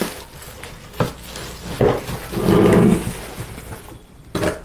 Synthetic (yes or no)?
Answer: no